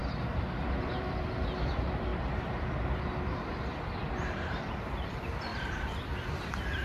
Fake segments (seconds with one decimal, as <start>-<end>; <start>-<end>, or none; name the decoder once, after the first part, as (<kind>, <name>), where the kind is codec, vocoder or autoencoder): 0.7-2.1 (vocoder, BigVGAN v2); 3.2-4.0; 4.9-6.8